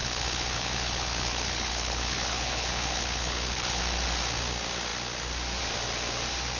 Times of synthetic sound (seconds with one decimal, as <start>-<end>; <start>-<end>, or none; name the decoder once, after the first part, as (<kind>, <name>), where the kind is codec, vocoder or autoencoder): 0.0-3.8 (codec, HILCodec)